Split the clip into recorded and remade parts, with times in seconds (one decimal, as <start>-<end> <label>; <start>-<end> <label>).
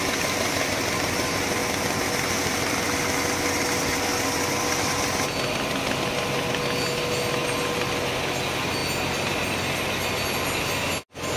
0.0-11.4 recorded